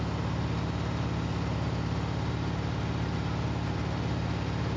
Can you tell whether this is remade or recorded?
recorded